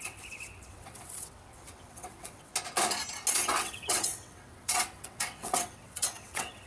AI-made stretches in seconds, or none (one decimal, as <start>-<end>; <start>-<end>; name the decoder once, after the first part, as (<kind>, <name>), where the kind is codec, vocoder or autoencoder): 0.0-2.5 (vocoder, WaveNeXt); 3.3-6.7